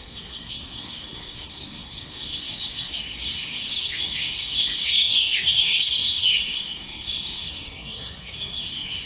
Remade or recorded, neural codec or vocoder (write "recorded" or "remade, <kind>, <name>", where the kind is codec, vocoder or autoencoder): remade, codec, SNAC